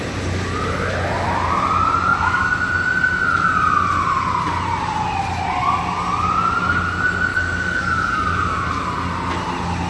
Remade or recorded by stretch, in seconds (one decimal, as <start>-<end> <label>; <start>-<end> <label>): 0.0-7.3 recorded; 7.3-8.7 remade; 8.7-9.9 recorded